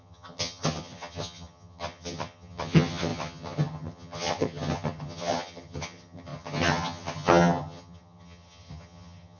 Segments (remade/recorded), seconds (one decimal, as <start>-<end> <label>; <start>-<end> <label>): 0.0-9.4 remade